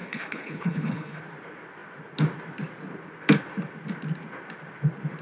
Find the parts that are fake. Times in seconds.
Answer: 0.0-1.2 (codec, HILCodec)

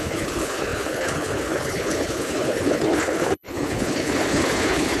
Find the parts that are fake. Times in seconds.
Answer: 0.0-5.0 (codec, HILCodec)

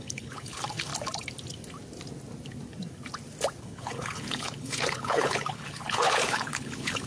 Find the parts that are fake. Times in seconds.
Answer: 0.0-0.9 (codec, HILCodec); 3.6-7.1

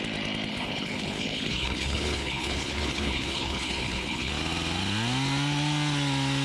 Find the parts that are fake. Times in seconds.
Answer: 0.5-4.3 (codec, HILCodec)

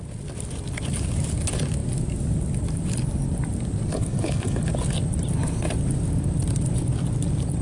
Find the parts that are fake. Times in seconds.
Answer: 3.9-4.7 (codec, HILCodec)